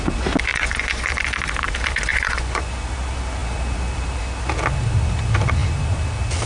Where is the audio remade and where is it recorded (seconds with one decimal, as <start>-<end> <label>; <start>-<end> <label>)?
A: 0.0-0.5 recorded; 0.5-1.1 remade; 1.1-2.1 recorded; 2.1-2.9 remade; 2.9-6.5 recorded